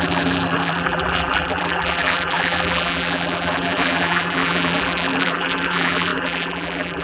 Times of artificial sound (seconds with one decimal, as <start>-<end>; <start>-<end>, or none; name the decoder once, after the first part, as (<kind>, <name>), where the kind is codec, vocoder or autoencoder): 0.0-7.0 (vocoder, BigVGAN v2)